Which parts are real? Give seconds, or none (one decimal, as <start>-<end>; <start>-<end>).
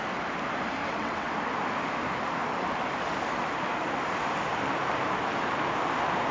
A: 0.0-0.8; 1.3-6.3